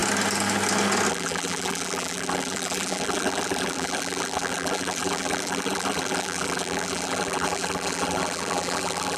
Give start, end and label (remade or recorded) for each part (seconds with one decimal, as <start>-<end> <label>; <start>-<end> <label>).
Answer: 0.0-1.1 recorded; 1.1-9.2 remade